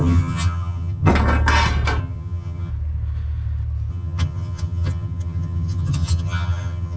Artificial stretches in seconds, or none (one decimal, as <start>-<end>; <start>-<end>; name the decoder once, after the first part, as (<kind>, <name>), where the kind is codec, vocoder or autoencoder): 0.0-1.1 (vocoder, HiFi-GAN); 2.0-2.7; 3.9-7.0